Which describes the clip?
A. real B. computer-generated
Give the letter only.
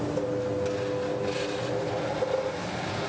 A